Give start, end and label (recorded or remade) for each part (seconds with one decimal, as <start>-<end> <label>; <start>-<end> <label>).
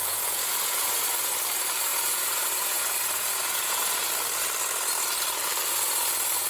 0.0-1.3 remade; 1.3-1.9 recorded; 1.9-4.1 remade; 4.1-6.5 recorded